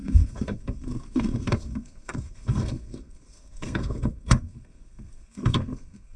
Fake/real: fake